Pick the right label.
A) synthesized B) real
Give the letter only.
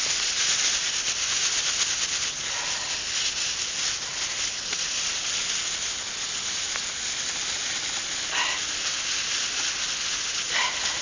B